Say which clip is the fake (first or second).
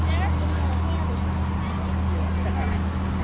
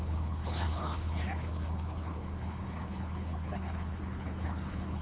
second